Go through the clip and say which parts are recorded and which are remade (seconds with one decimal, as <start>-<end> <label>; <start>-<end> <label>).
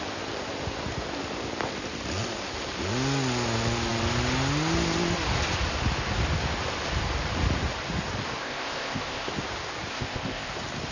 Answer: 0.0-8.4 recorded; 8.4-9.3 remade; 9.3-9.9 recorded; 9.9-10.5 remade; 10.5-10.9 recorded